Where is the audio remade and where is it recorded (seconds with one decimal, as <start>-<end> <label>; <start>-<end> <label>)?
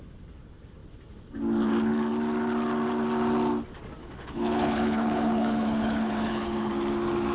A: 0.0-4.0 recorded; 4.0-6.7 remade; 6.7-7.3 recorded